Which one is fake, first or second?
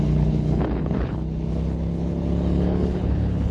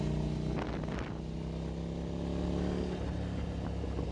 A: first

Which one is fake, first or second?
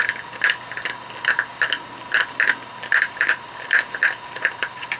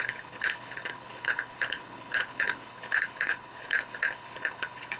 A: second